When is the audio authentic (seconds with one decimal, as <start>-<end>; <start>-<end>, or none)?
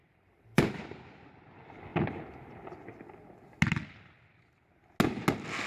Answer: 1.3-5.7